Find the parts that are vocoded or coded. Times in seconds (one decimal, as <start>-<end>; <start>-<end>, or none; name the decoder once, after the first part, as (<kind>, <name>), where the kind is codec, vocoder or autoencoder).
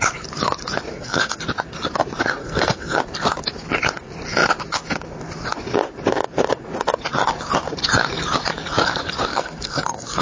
0.9-1.4 (codec, SNAC); 2.4-3.0; 9.3-10.2